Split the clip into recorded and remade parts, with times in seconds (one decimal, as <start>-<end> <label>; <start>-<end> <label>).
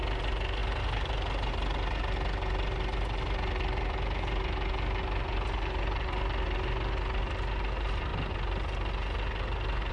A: 0.0-9.9 recorded